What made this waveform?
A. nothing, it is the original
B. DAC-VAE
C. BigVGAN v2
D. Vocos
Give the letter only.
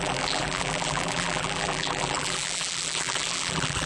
C